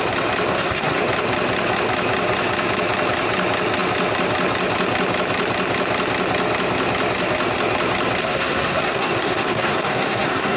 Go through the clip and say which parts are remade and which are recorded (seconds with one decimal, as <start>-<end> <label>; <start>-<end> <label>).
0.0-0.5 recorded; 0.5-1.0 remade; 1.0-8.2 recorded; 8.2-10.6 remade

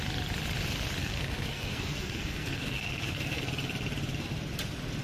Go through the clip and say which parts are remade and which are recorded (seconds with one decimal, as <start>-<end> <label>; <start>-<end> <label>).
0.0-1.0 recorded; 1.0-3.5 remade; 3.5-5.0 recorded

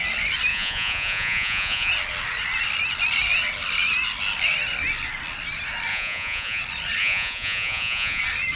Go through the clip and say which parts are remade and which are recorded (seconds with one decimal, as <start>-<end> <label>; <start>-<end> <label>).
0.0-0.5 recorded; 0.5-1.9 remade; 1.9-5.9 recorded; 5.9-6.6 remade; 6.6-7.0 recorded; 7.0-8.2 remade; 8.2-8.6 recorded

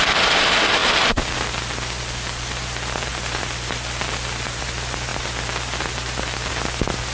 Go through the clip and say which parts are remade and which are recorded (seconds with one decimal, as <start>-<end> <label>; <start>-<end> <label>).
0.0-0.8 recorded; 0.8-2.6 remade; 2.6-3.1 recorded; 3.1-4.6 remade; 4.6-7.1 recorded